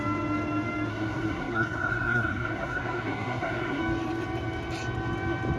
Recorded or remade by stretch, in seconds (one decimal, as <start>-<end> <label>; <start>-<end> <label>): 0.0-0.9 recorded; 0.9-3.8 remade; 3.8-5.6 recorded